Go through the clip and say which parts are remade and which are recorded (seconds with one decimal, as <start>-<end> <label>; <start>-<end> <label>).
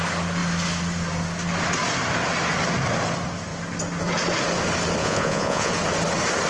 0.0-5.0 recorded; 5.0-5.7 remade; 5.7-6.5 recorded